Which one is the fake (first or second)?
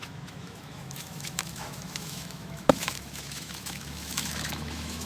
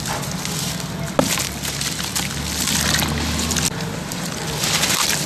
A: first